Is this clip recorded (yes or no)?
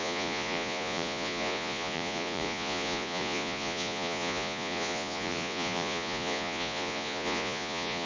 no